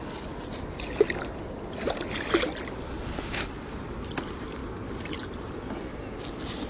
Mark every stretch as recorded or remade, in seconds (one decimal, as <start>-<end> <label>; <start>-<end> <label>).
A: 0.0-6.7 recorded

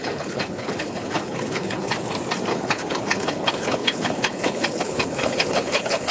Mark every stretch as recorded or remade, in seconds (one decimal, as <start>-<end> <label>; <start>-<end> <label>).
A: 0.0-1.9 remade; 1.9-2.5 recorded; 2.5-6.1 remade